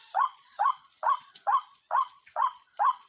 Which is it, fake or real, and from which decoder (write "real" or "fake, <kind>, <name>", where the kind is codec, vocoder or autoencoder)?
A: fake, vocoder, Vocos